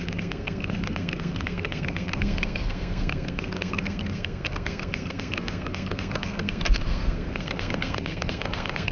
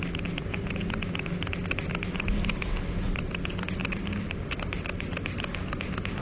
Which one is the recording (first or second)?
second